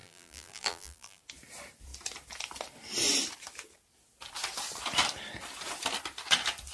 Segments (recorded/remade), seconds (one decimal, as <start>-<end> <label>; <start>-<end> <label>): 0.0-1.2 remade; 1.2-6.7 recorded